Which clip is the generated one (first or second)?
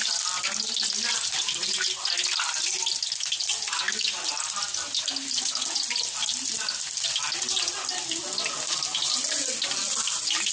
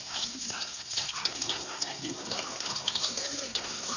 second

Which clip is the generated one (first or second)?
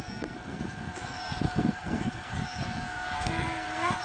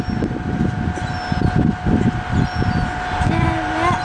first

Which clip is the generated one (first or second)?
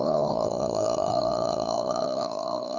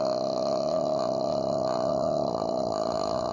first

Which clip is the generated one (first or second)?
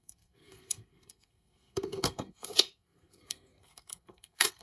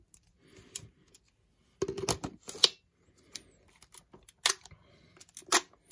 first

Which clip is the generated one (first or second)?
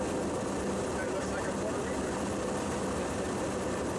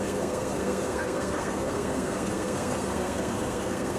second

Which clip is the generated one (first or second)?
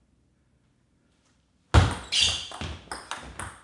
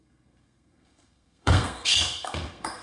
second